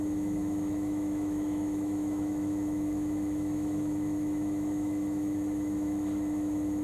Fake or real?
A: fake